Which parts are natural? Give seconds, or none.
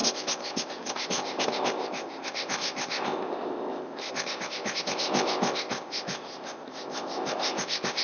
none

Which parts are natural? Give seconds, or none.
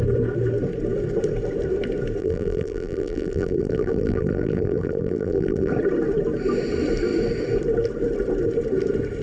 0.0-2.2; 5.7-9.2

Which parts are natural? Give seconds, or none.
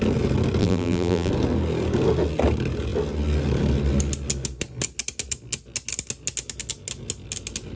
0.0-0.6; 1.3-7.8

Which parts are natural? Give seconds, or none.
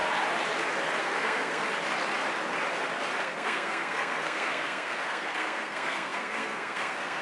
0.0-1.0; 1.6-3.2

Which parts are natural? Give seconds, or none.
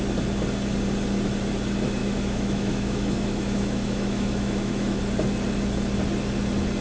0.0-2.0; 5.0-6.8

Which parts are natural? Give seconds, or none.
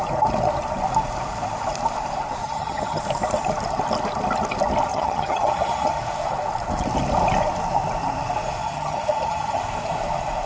0.0-2.4; 3.0-4.9; 6.0-8.6; 9.6-10.5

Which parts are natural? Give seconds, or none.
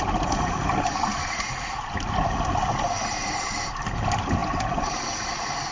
0.0-5.7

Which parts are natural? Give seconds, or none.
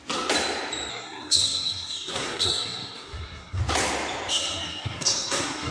0.0-0.9; 3.6-4.3